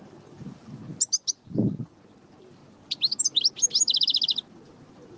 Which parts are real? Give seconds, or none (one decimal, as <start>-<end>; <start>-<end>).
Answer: 0.0-5.2